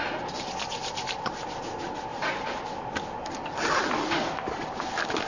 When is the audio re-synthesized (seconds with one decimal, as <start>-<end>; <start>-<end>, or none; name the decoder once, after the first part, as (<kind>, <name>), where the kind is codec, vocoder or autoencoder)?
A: none